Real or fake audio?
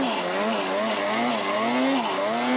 real